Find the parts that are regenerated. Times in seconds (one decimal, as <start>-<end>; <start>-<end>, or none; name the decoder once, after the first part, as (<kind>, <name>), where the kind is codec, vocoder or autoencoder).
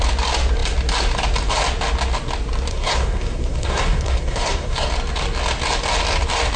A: 2.7-4.9 (codec, SNAC)